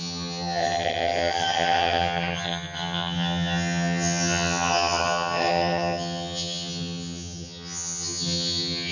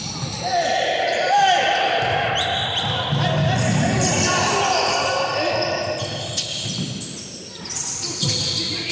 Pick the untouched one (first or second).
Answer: second